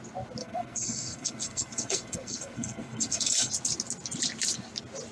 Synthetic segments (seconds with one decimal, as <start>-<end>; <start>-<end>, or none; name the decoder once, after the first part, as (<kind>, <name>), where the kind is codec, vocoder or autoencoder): 0.4-3.5 (codec, SNAC)